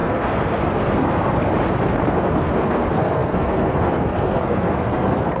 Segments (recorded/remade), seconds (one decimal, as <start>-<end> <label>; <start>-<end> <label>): 0.0-1.5 remade; 1.5-2.1 recorded; 2.1-5.4 remade

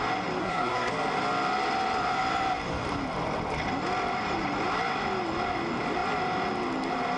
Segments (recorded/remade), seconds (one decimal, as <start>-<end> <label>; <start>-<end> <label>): 0.0-0.4 recorded; 0.4-0.9 remade; 0.9-7.2 recorded

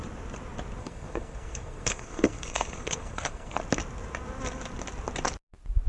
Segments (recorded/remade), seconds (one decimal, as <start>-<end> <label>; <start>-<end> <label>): 0.0-0.8 recorded; 0.8-3.6 remade; 3.6-5.9 recorded

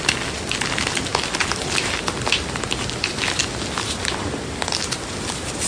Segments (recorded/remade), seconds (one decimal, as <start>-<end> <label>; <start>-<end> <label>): 0.0-5.7 recorded

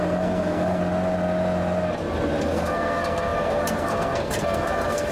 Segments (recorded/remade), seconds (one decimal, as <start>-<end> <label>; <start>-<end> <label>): 0.0-0.8 remade; 0.8-2.4 recorded; 2.4-5.1 remade

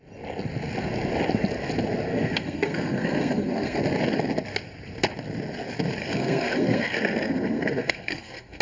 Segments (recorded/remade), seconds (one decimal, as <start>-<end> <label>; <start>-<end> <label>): 0.0-2.1 recorded; 2.1-3.8 remade; 3.8-6.0 recorded; 6.0-8.6 remade

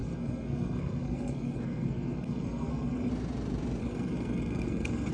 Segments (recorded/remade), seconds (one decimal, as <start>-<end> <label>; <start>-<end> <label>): 0.0-3.1 remade; 3.1-3.8 recorded; 3.8-5.1 remade

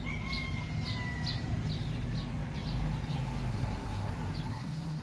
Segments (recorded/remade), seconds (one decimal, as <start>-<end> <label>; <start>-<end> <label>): 0.0-3.5 recorded; 3.5-4.1 remade; 4.1-4.5 recorded; 4.5-5.0 remade